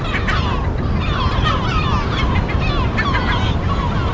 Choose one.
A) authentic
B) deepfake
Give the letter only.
A